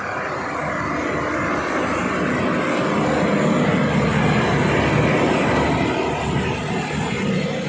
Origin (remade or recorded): recorded